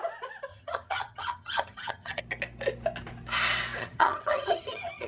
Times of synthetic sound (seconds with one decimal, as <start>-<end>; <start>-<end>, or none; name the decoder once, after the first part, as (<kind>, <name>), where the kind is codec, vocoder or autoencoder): 0.5-2.2 (vocoder, HiFi-GAN); 3.8-5.1